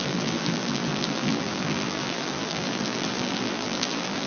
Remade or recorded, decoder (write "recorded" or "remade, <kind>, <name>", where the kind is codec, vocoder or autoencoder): remade, vocoder, BigVGAN v2